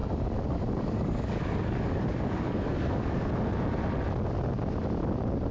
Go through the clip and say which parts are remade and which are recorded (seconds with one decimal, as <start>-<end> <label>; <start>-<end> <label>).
0.0-3.3 remade; 3.3-5.5 recorded